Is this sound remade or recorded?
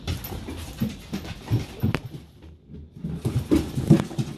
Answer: recorded